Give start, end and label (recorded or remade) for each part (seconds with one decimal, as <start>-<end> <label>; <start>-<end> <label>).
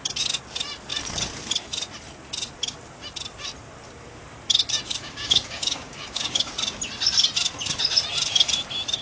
0.0-4.9 recorded; 4.9-6.5 remade; 6.5-9.0 recorded